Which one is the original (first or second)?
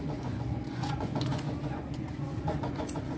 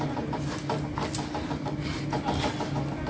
second